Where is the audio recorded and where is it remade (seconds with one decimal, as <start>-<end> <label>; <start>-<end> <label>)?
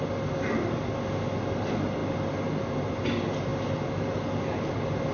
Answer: 0.0-5.1 recorded